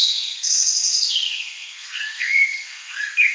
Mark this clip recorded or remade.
remade